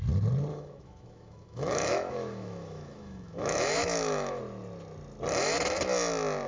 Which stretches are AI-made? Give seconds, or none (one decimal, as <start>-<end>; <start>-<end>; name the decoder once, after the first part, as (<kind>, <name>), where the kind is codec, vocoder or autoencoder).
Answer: 0.5-4.4 (autoencoder, DAC-VAE)